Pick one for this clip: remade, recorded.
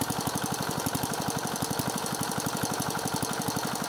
recorded